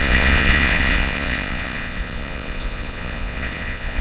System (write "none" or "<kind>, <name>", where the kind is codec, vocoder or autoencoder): vocoder, Vocos